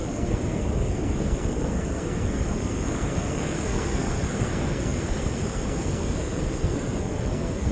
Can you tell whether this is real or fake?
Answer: fake